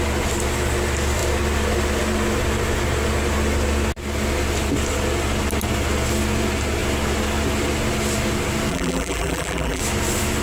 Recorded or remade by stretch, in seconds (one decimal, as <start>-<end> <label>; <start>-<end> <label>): 0.0-8.7 recorded; 8.7-9.8 remade; 9.8-10.4 recorded